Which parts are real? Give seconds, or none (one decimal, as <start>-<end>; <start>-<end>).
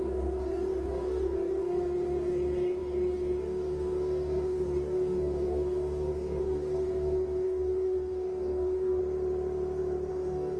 9.0-10.1